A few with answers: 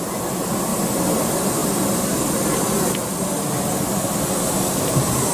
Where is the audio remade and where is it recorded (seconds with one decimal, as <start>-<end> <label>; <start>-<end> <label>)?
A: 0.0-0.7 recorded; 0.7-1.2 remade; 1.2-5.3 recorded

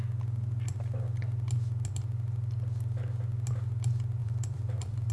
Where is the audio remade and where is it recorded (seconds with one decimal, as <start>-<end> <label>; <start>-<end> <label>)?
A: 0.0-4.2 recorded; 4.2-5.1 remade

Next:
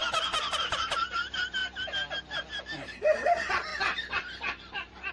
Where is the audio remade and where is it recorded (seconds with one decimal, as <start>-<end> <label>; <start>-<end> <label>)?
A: 0.0-1.6 remade; 1.6-2.6 recorded; 2.6-5.1 remade

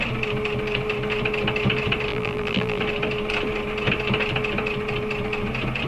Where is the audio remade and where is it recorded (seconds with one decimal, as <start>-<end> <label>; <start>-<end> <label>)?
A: 0.0-2.1 recorded; 2.1-2.8 remade; 2.8-5.9 recorded

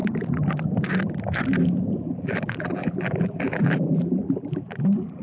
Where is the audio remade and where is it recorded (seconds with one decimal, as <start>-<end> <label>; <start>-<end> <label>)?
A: 0.0-2.0 recorded; 2.0-5.2 remade

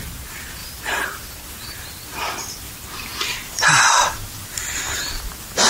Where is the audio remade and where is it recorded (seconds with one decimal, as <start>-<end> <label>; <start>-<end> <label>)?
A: 0.0-0.6 recorded; 0.6-1.6 remade; 1.6-5.7 recorded

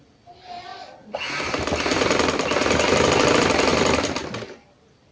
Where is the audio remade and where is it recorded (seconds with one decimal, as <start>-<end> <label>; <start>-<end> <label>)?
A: 0.0-0.7 recorded; 0.7-1.4 remade; 1.4-5.1 recorded

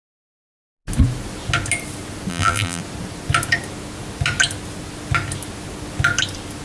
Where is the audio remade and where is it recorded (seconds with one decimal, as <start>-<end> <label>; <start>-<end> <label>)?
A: 0.0-2.3 recorded; 2.3-2.8 remade; 2.8-6.6 recorded